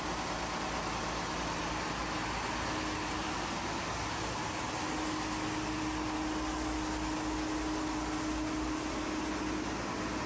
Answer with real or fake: real